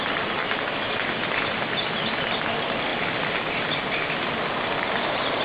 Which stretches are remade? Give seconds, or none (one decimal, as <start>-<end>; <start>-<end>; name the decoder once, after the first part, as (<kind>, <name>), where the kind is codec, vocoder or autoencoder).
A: 0.4-0.9 (autoencoder, DAC-VAE)